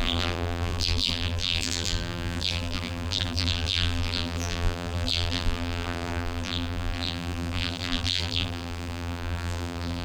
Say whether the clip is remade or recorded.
remade